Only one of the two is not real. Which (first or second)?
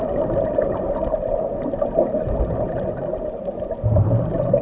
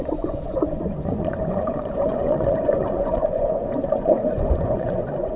second